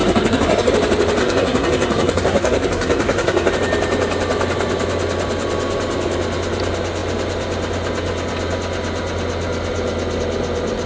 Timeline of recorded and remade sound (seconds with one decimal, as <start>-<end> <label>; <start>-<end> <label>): 0.0-0.7 remade; 0.7-1.2 recorded; 1.2-3.5 remade; 3.5-10.9 recorded